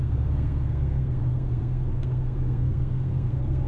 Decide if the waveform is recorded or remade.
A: remade